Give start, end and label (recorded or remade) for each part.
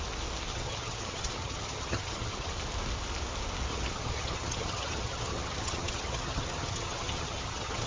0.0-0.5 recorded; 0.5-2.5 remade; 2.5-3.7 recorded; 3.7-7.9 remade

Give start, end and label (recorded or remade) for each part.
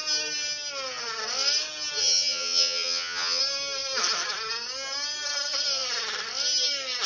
0.0-2.0 recorded; 2.0-3.4 remade; 3.4-7.1 recorded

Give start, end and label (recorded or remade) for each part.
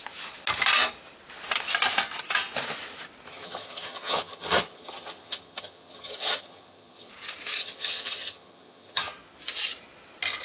0.0-3.3 recorded; 3.3-7.1 remade; 7.1-7.6 recorded; 7.6-9.1 remade; 9.1-10.4 recorded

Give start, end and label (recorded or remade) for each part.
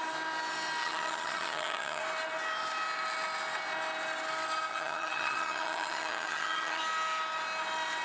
0.0-0.8 recorded; 0.8-2.0 remade; 2.0-4.7 recorded; 4.7-6.8 remade; 6.8-8.0 recorded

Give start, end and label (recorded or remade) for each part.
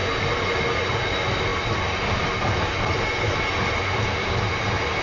0.0-5.0 recorded